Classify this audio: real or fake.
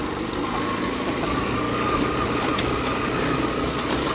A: real